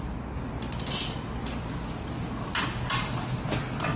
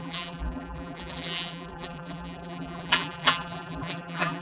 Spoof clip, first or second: second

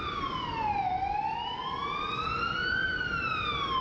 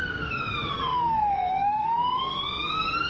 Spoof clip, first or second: second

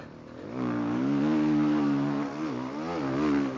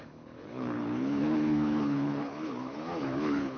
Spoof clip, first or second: second